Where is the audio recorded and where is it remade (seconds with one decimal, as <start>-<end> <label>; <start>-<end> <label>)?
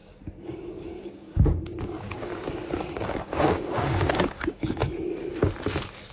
0.0-2.3 remade; 2.3-2.8 recorded; 2.8-4.8 remade; 4.8-6.1 recorded